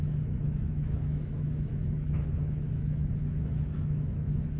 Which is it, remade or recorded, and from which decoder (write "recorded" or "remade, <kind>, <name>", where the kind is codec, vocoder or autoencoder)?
remade, autoencoder, DAC-VAE